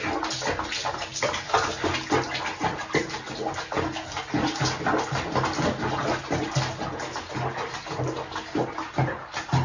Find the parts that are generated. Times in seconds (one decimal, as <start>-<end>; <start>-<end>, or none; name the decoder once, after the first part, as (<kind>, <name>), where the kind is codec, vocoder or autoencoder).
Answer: none